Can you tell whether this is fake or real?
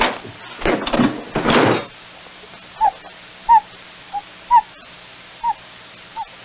real